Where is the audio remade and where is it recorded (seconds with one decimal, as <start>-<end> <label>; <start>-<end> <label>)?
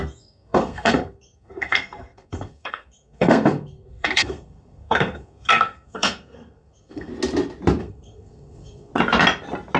0.0-7.1 remade; 7.1-7.8 recorded; 7.8-8.9 remade; 8.9-9.8 recorded